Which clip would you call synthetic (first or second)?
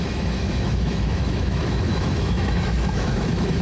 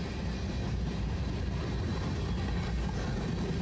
first